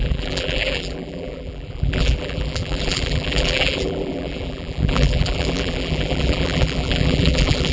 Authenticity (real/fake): fake